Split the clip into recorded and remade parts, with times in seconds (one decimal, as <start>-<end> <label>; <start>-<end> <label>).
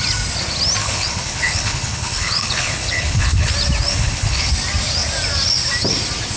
0.0-0.8 recorded; 0.8-3.5 remade; 3.5-3.9 recorded; 3.9-4.5 remade; 4.5-6.4 recorded